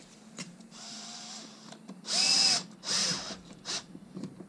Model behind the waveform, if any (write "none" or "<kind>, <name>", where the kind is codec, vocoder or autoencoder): vocoder, BigVGAN v2